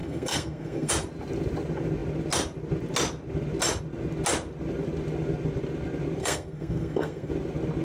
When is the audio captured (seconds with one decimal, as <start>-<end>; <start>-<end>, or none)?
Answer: 0.9-6.2; 7.3-7.8